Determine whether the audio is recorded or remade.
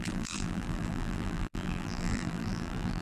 remade